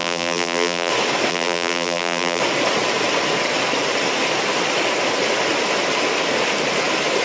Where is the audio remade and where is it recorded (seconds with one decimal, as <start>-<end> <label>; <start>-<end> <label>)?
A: 0.0-0.9 remade; 0.9-1.3 recorded; 1.3-2.4 remade; 2.4-7.2 recorded